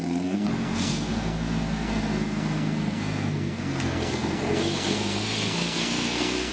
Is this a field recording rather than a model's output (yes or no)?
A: no